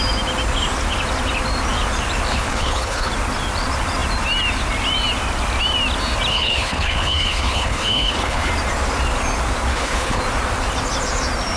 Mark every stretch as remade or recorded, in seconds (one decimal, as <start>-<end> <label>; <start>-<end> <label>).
0.0-2.3 recorded; 2.3-3.1 remade; 3.1-6.3 recorded; 6.3-8.5 remade; 8.5-9.7 recorded; 9.7-10.2 remade; 10.2-11.6 recorded